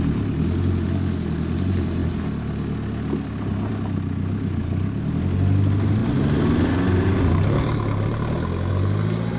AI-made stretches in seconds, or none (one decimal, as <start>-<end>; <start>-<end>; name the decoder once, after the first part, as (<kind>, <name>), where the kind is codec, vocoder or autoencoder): none